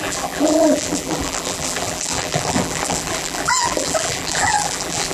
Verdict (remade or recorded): remade